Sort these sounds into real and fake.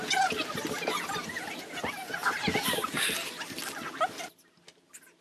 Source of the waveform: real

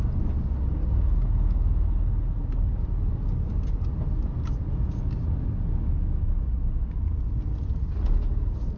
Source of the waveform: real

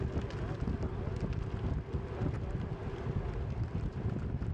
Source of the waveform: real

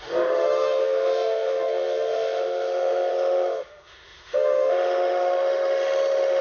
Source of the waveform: fake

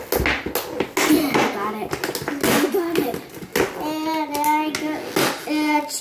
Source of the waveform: real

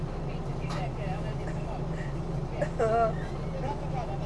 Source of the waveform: real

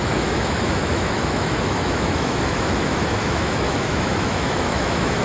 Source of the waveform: fake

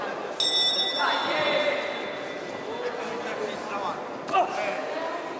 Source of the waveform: real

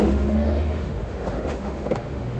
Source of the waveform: fake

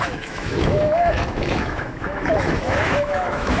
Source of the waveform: fake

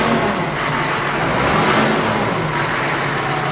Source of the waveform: real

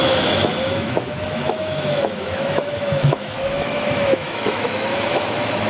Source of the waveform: fake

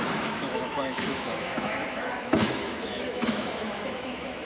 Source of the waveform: fake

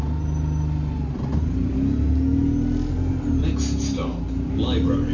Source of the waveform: real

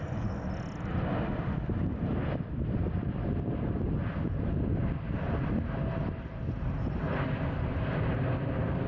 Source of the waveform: real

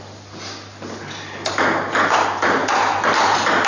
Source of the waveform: real